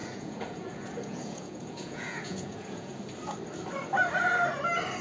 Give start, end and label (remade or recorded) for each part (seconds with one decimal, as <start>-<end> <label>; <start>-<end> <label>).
0.0-3.0 remade; 3.0-5.0 recorded